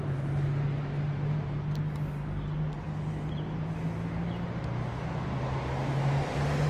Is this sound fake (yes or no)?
no